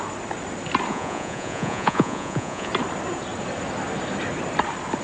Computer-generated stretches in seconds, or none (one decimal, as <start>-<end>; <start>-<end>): 0.9-2.7